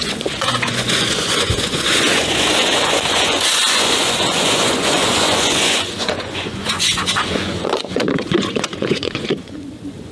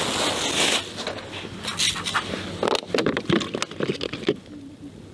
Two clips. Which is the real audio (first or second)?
second